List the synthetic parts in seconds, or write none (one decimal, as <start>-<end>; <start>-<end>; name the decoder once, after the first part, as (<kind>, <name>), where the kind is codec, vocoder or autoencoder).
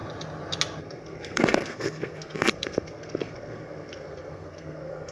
0.8-5.1 (codec, SNAC)